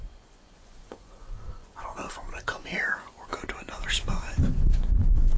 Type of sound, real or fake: fake